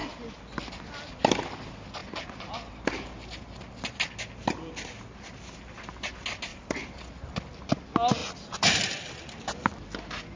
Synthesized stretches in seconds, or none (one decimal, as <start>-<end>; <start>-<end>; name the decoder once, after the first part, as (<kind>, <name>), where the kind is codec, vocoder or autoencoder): 6.5-7.2 (vocoder, BigVGAN v2); 8.2-9.3